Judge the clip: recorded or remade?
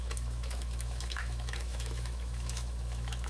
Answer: remade